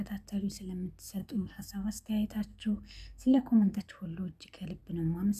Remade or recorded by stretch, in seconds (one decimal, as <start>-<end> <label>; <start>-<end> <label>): 0.0-1.2 recorded; 1.2-2.1 remade; 2.1-2.5 recorded; 2.5-3.8 remade; 3.8-5.4 recorded